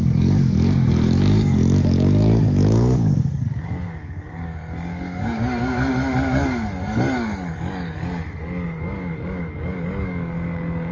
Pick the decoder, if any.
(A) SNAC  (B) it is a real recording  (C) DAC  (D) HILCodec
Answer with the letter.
C